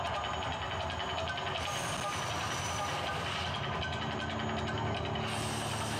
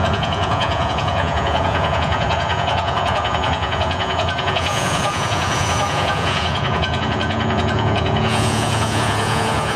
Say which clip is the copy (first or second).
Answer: second